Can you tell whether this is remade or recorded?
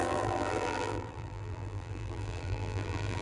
remade